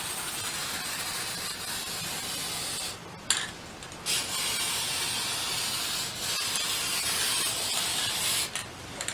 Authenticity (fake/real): real